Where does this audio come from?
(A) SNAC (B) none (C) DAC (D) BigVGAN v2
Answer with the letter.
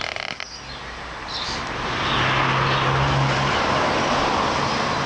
B